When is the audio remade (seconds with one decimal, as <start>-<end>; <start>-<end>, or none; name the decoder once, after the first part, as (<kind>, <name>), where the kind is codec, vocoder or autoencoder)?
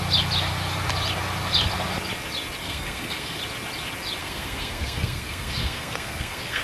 2.6-3.4 (codec, SNAC); 4.2-6.6